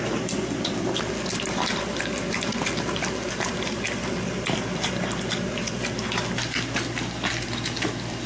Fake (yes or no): no